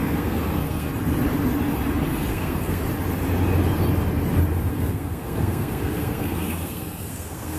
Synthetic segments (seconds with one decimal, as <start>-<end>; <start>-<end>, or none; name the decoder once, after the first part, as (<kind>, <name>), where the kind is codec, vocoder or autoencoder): 0.0-0.9 (codec, SNAC); 2.3-2.8; 4.7-7.6